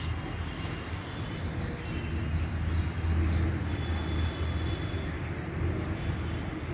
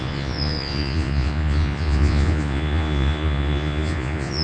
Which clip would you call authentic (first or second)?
first